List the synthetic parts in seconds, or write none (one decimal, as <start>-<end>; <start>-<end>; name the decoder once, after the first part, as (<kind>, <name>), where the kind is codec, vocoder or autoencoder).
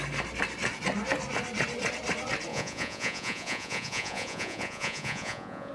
2.5-5.7 (vocoder, Vocos)